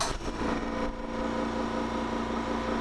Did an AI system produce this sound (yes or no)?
no